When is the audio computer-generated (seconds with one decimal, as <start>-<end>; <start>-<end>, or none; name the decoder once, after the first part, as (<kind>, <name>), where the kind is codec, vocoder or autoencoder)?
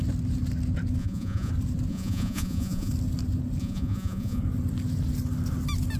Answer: 1.0-1.5 (vocoder, Vocos); 1.9-2.9; 3.6-4.4